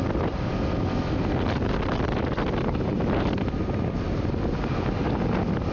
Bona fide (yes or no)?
yes